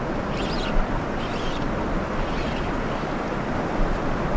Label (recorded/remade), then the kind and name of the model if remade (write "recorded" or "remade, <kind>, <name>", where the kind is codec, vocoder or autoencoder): recorded